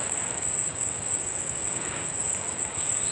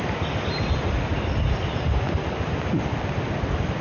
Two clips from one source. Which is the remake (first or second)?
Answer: first